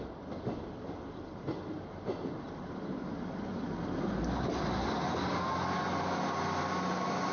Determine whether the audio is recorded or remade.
recorded